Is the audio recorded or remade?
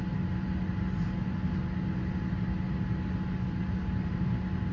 recorded